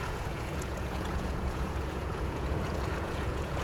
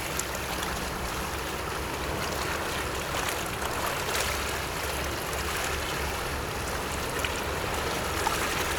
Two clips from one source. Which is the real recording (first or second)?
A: second